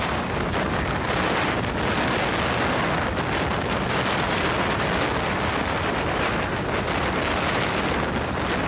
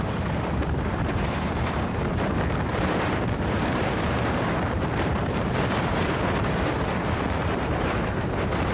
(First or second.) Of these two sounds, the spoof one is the second